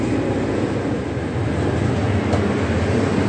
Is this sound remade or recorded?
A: recorded